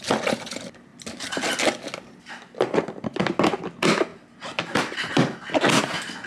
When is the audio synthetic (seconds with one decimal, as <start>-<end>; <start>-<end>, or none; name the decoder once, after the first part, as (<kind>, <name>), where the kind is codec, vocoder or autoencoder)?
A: none